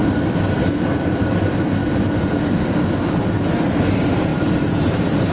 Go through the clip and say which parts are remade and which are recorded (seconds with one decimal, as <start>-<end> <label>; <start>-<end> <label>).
0.0-0.9 remade; 0.9-4.3 recorded; 4.3-5.3 remade